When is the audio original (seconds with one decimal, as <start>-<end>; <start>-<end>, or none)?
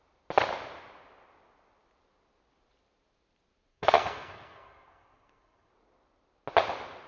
0.0-3.7; 5.7-7.1